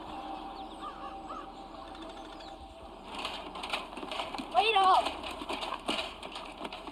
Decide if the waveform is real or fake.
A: fake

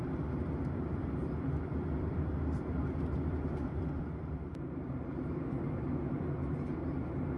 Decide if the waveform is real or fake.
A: fake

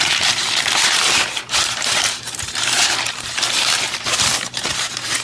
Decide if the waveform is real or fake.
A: fake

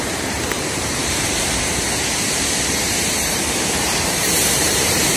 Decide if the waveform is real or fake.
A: fake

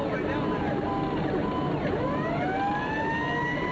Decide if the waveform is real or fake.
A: real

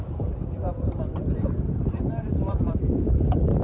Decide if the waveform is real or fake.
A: fake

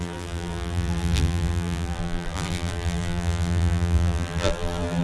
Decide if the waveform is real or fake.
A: fake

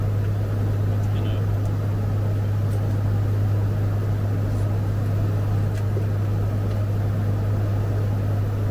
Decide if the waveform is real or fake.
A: real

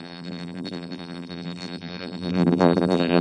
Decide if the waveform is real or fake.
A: fake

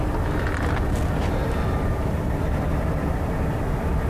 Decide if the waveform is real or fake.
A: real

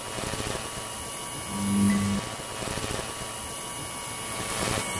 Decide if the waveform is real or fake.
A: real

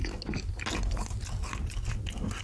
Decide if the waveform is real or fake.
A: real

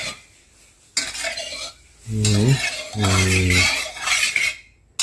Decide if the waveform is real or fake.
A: real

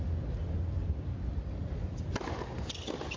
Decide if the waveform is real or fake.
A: real